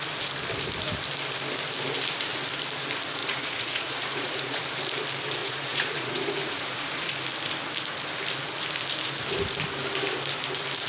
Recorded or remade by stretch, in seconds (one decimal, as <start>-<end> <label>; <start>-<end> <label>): 0.0-3.2 recorded; 3.2-4.6 remade; 4.6-5.4 recorded; 5.4-7.1 remade; 7.1-10.9 recorded